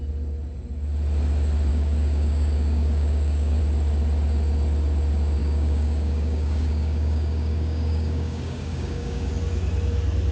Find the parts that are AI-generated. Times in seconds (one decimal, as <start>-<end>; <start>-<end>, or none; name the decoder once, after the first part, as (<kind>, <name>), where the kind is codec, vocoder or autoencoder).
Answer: 1.7-3.6 (codec, DAC); 5.4-9.3